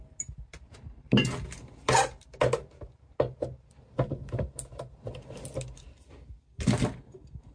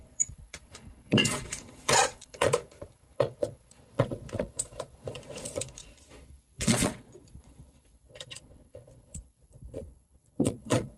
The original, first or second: first